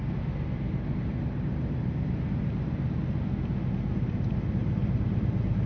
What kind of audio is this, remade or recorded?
recorded